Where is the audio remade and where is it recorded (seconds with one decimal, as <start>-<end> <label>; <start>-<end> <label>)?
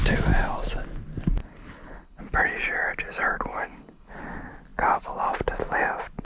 0.0-1.4 recorded; 1.4-2.2 remade; 2.2-3.5 recorded; 3.5-4.1 remade; 4.1-6.2 recorded